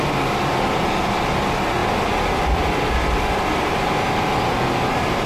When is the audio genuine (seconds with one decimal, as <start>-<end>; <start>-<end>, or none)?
0.0-5.3

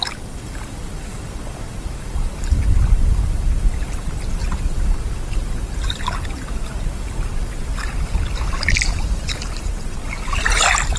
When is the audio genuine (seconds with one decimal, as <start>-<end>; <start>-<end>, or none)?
0.0-11.0

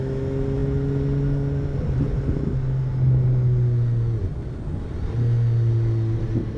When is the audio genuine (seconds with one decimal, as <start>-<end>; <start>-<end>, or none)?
0.0-6.6

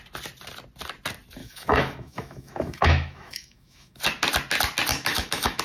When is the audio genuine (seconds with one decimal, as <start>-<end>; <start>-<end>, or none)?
0.0-1.4; 4.0-4.9

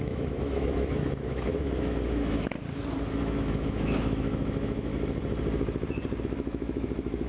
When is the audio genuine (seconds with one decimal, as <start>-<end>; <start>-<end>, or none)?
2.5-3.2; 4.9-6.2

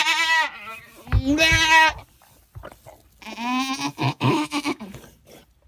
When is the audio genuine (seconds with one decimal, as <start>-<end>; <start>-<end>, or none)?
0.0-3.9; 4.8-5.7